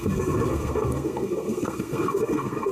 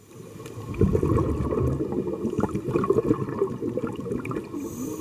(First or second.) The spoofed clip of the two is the first